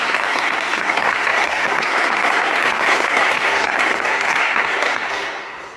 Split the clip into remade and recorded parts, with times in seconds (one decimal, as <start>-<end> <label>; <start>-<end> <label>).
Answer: 0.0-5.8 remade